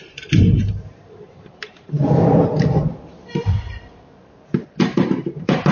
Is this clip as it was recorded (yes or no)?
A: no